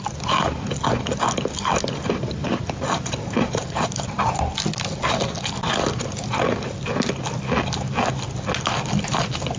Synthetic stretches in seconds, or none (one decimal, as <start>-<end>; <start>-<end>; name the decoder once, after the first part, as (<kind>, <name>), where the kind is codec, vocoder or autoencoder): 2.4-4.4 (vocoder, BigVGAN v2)